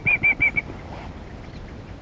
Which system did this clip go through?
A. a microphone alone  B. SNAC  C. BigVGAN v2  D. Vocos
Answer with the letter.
A